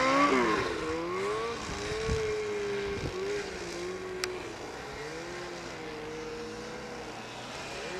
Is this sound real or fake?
real